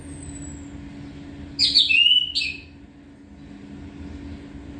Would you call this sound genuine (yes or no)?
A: yes